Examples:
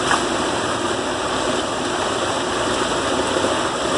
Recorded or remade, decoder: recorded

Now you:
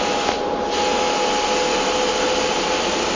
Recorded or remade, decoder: recorded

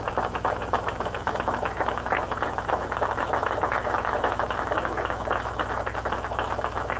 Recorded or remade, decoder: remade, autoencoder, DAC-VAE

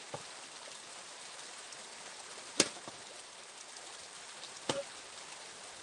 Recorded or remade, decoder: recorded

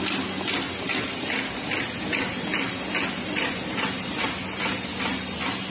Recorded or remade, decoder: recorded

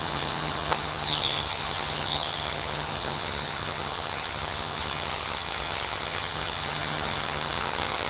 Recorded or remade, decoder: remade, vocoder, HiFi-GAN